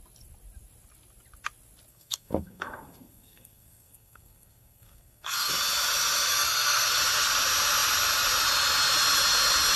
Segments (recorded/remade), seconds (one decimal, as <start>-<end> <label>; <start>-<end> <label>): 0.0-1.9 recorded; 1.9-5.5 remade; 5.5-6.3 recorded; 6.3-6.9 remade; 6.9-9.8 recorded